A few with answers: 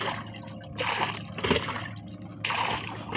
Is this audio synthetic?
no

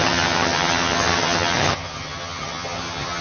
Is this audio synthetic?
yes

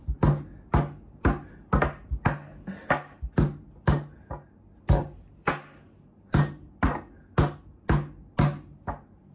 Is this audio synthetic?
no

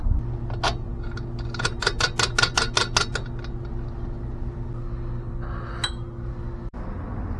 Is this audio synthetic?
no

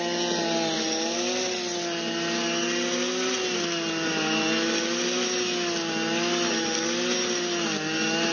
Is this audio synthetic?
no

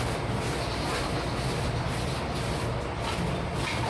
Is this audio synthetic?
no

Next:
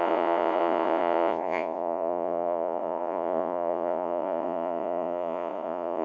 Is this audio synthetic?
yes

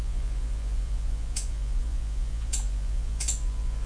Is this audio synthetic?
yes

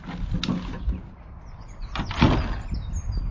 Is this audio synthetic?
no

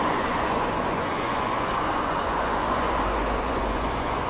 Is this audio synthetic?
yes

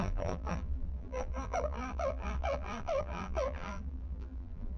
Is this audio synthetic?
yes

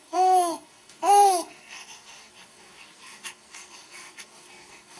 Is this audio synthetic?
yes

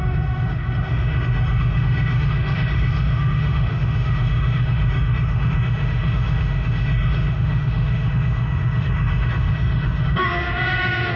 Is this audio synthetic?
yes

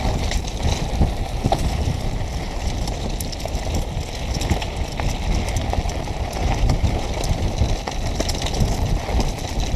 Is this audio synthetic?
no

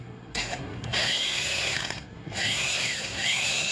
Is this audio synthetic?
yes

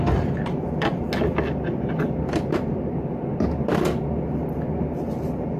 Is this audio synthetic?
no